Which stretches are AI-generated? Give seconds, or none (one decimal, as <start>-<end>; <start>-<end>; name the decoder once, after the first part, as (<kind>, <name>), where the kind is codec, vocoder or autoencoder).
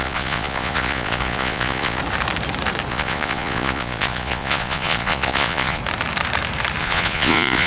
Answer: 0.0-2.0 (vocoder, Vocos); 2.9-5.8; 6.8-7.7